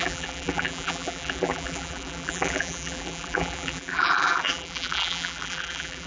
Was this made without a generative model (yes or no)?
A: no